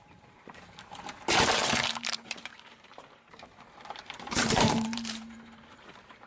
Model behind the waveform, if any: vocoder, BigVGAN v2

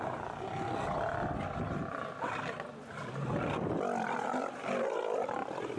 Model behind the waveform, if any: none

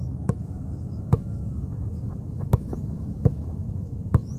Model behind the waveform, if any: autoencoder, DAC-VAE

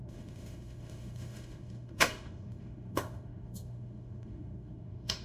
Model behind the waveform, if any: autoencoder, DAC-VAE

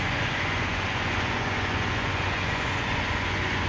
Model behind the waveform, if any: vocoder, Vocos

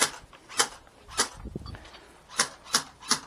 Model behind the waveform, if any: vocoder, BigVGAN v2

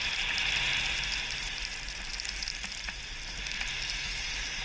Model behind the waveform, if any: none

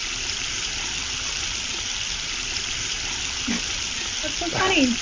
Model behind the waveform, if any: none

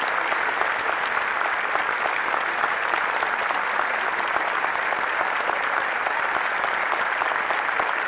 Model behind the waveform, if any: none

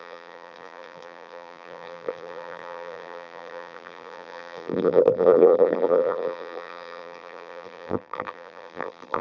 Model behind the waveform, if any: vocoder, BigVGAN v2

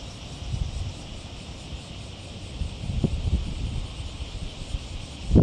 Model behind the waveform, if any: vocoder, BigVGAN v2